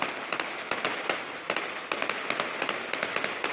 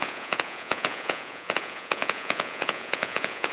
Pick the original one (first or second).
first